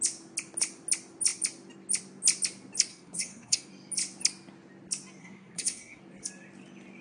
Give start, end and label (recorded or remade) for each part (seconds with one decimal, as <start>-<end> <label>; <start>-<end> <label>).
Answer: 0.0-2.9 recorded; 2.9-3.7 remade; 3.7-5.2 recorded; 5.2-6.0 remade; 6.0-7.0 recorded